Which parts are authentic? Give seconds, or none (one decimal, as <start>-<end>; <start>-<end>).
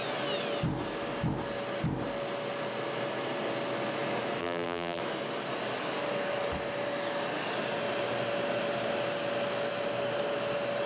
0.0-4.4; 5.0-10.9